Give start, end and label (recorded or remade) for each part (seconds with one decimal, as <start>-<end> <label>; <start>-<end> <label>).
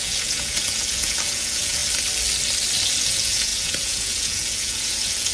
0.0-1.8 remade; 1.8-3.0 recorded; 3.0-5.3 remade